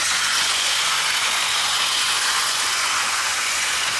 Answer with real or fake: fake